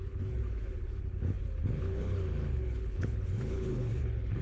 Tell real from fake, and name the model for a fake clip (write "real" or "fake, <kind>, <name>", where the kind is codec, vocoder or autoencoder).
fake, codec, HILCodec